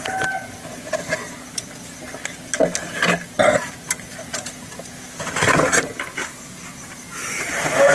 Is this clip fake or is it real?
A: real